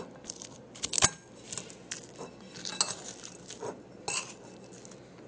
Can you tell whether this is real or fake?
real